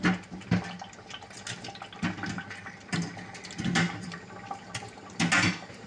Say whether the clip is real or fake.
real